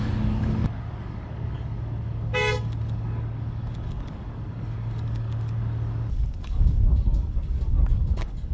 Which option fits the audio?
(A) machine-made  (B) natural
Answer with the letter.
A